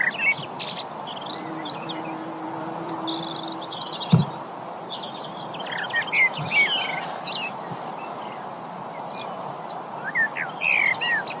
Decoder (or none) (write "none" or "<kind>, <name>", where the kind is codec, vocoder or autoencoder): none